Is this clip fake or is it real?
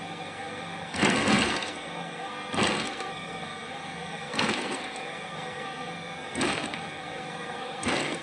fake